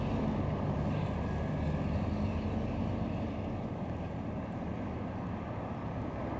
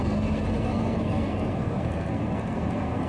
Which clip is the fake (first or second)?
second